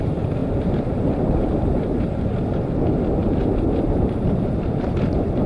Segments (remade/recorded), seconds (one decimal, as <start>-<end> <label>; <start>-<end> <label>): 0.0-0.4 recorded; 0.4-2.6 remade; 2.6-3.2 recorded; 3.2-5.5 remade